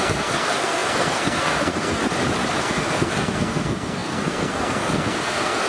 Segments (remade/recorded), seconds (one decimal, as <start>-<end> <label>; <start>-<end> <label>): 0.0-2.0 remade; 2.0-2.6 recorded; 2.6-5.7 remade